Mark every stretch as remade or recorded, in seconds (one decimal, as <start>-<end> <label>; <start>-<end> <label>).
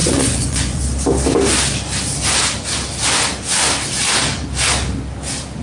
0.0-0.8 remade; 0.8-5.6 recorded